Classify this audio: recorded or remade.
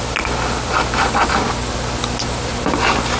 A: recorded